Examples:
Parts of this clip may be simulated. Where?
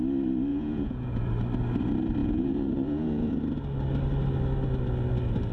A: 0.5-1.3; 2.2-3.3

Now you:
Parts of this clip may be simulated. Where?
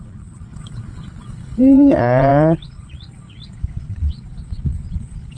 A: 0.0-5.4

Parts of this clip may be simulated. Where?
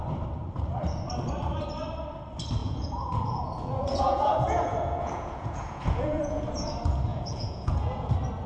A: 2.6-6.4; 7.1-8.1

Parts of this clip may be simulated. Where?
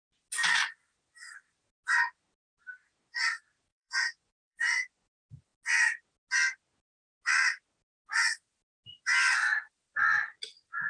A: 3.7-5.1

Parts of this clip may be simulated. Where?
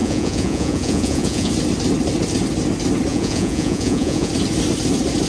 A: 0.0-1.5; 3.1-4.3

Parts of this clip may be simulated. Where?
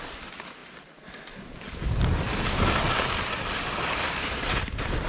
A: none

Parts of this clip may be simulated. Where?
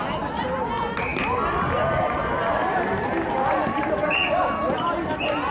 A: none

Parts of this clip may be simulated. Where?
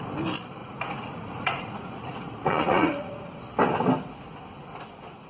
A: 0.6-3.4